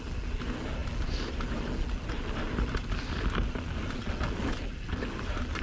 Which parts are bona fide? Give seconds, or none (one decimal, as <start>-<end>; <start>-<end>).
0.0-5.6